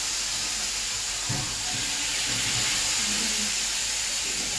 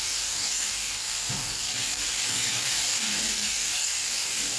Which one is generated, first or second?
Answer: second